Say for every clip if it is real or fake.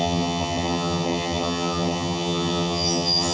fake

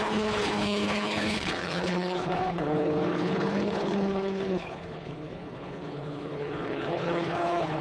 fake